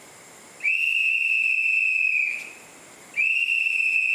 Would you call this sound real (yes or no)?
yes